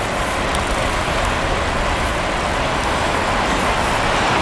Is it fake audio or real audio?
real